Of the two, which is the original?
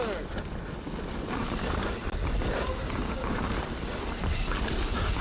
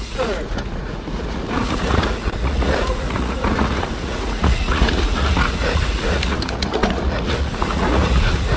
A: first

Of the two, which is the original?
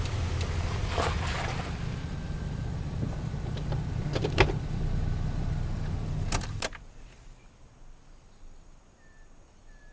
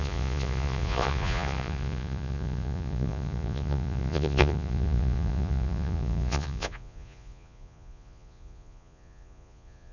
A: first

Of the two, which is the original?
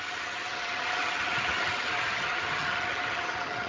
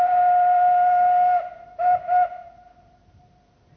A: second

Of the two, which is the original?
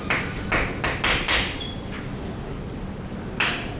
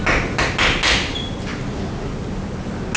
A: second